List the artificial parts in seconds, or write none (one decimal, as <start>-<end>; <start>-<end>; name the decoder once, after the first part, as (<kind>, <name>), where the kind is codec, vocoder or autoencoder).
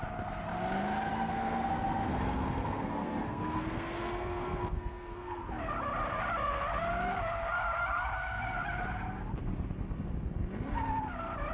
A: 1.1-5.4 (codec, SNAC)